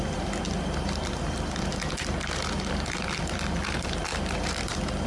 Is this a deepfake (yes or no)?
yes